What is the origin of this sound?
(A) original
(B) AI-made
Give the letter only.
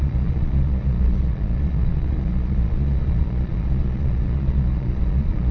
B